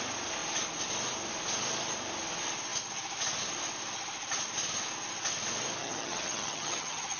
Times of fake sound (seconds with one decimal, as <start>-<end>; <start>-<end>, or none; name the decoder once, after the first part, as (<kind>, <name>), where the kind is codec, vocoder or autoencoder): 5.8-7.2 (vocoder, HiFi-GAN)